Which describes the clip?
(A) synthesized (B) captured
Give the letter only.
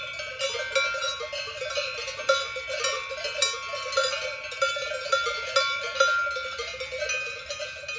B